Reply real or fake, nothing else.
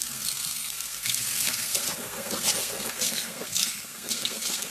fake